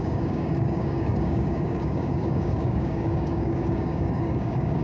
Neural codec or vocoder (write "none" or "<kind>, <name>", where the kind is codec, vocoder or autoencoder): codec, DAC